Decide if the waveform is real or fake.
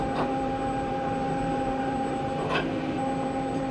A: fake